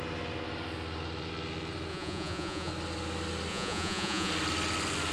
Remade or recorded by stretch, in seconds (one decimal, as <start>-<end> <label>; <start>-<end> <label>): 0.0-1.9 recorded; 1.9-2.7 remade; 2.7-3.5 recorded; 3.5-4.3 remade; 4.3-5.1 recorded